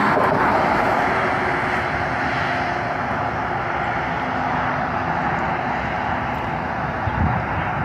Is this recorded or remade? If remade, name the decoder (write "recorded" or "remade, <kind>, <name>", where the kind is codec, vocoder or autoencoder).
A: recorded